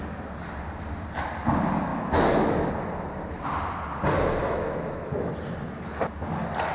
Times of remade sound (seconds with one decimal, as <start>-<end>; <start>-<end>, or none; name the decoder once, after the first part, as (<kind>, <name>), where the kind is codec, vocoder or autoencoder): 1.9-2.7 (autoencoder, DAC-VAE); 4.4-5.3